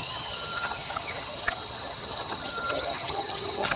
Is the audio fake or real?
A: fake